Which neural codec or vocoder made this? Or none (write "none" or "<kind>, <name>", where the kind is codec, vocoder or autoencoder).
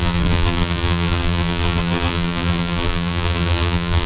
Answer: vocoder, BigVGAN v2